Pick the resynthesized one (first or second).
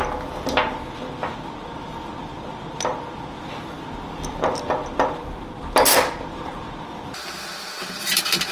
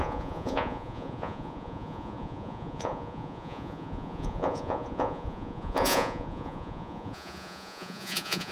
second